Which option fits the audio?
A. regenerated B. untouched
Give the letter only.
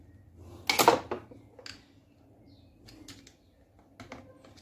B